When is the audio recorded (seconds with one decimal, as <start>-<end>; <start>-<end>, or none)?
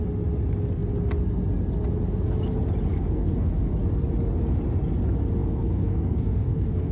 0.0-2.9; 3.7-5.4